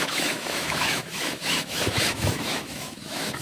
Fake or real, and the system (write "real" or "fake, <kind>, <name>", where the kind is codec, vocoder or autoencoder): fake, autoencoder, DAC-VAE